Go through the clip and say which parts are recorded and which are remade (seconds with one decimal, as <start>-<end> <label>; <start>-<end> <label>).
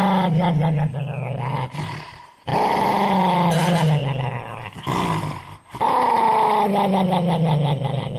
0.0-8.2 recorded